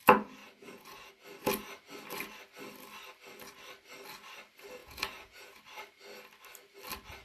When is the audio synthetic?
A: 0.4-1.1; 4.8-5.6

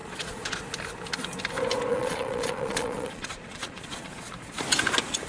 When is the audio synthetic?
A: 0.0-0.6; 1.9-4.3